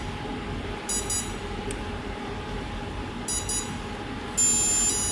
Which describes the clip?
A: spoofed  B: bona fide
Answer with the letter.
B